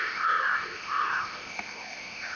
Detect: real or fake fake